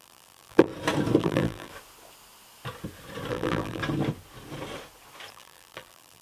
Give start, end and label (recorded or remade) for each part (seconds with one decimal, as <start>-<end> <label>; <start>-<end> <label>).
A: 0.0-0.7 remade; 0.7-1.2 recorded; 1.2-1.7 remade; 1.7-3.3 recorded; 3.3-3.8 remade; 3.8-5.3 recorded; 5.3-6.2 remade